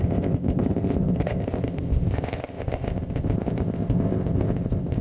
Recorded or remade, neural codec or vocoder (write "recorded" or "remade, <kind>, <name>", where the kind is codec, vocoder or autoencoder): remade, codec, ZipCodec